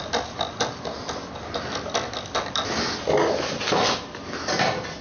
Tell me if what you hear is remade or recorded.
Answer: recorded